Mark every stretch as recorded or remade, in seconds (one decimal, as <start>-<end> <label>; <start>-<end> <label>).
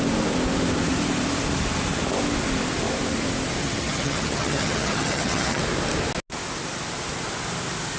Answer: 0.0-3.6 recorded; 3.6-5.6 remade; 5.6-8.0 recorded